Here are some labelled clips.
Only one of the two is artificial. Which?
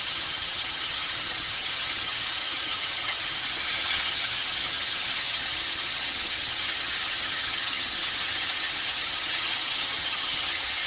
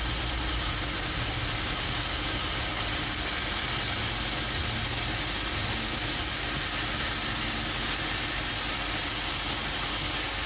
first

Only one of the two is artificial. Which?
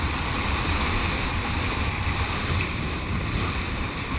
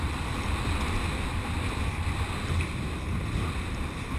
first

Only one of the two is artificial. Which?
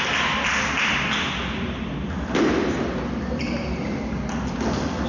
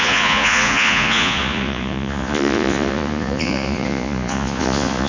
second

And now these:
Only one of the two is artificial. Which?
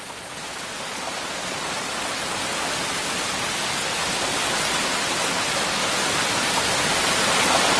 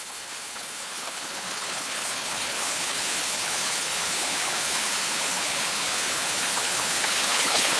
second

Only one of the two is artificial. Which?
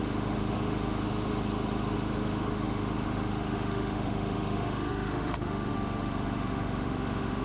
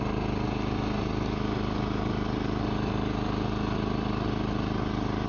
first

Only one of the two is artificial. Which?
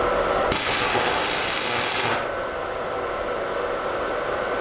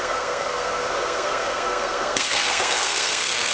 second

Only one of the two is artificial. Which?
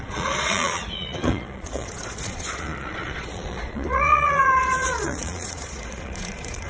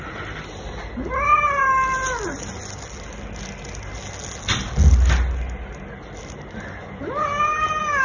first